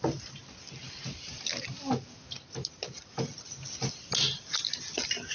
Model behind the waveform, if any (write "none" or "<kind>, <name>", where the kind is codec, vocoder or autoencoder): none